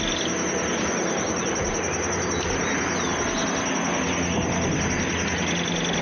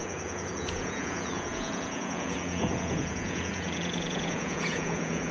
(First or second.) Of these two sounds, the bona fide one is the first